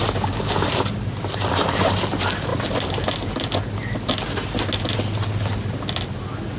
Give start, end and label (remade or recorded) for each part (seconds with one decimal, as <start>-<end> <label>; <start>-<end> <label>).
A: 0.0-6.6 recorded